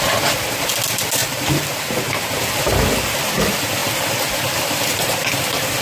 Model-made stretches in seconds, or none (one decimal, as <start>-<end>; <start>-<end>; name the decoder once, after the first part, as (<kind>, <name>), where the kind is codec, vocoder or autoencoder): 1.2-3.2 (vocoder, BigVGAN v2); 3.8-5.8